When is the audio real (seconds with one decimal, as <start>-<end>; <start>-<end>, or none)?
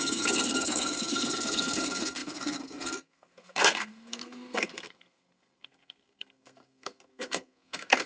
none